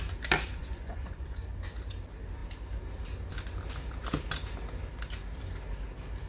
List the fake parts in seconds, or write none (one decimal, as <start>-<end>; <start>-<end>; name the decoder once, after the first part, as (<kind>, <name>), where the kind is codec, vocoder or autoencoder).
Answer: 0.6-1.4 (vocoder, Vocos)